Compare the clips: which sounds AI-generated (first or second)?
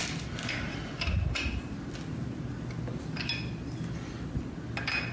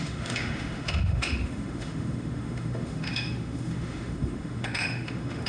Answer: second